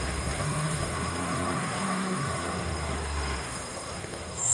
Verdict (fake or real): fake